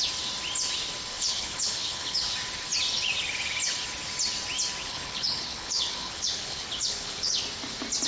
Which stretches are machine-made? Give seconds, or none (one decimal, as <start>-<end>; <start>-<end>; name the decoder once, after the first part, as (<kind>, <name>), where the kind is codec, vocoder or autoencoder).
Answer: 1.1-2.2 (codec, HILCodec); 4.8-7.4